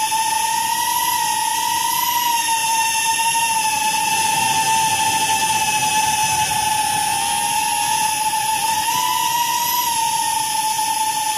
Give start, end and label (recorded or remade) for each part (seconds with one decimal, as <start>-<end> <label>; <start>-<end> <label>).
0.0-2.6 recorded; 2.6-3.6 remade; 3.6-6.2 recorded; 6.2-6.8 remade; 6.8-11.4 recorded